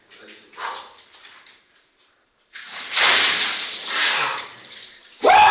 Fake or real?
fake